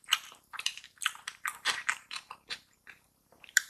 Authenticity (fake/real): fake